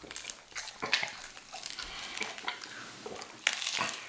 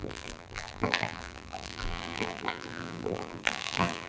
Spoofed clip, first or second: second